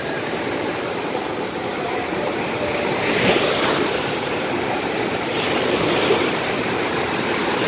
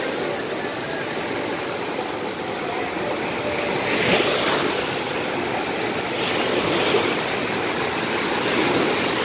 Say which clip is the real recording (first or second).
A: second